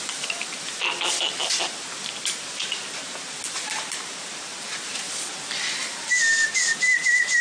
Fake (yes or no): no